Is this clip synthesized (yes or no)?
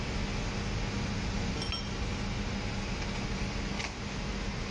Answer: no